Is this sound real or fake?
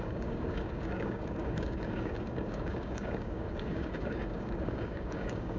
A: fake